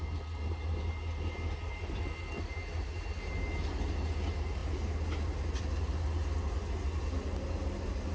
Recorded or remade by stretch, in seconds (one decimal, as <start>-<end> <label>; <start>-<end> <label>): 0.0-8.1 recorded